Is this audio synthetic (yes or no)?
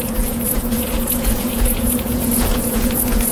yes